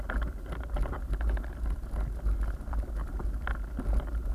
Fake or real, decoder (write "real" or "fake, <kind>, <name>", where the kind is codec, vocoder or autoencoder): real